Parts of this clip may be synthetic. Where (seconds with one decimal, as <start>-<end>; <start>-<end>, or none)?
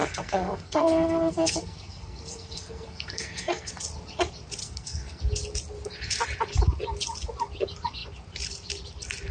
0.0-3.7; 4.6-5.2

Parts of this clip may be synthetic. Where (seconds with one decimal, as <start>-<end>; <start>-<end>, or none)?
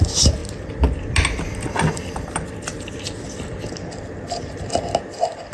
none